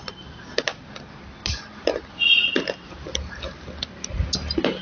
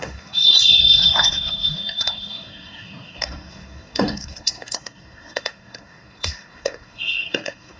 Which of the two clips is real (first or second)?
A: first